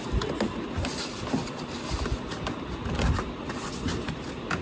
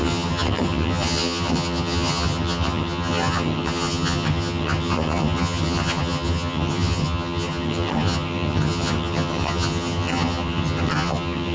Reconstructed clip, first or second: second